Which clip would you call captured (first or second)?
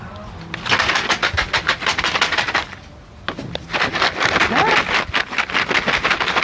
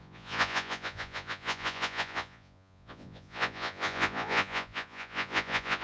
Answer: first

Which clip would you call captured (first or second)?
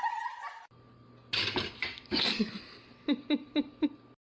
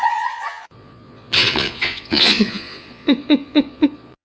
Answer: first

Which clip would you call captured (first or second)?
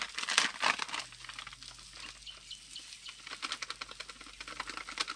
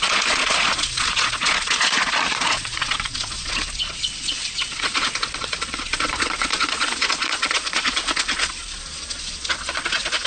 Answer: first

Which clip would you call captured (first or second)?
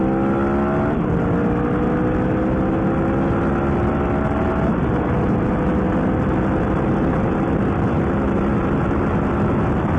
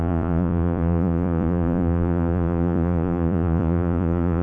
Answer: first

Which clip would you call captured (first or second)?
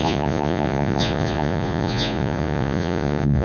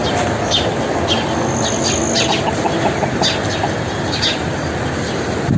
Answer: second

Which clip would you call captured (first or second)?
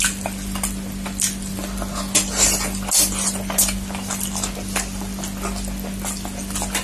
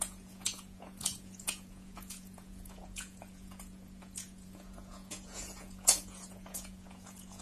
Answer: first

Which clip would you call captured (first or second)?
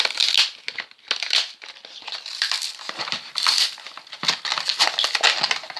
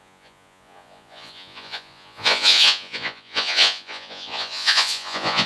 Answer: first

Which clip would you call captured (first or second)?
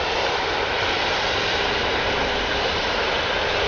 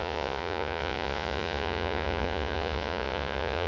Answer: first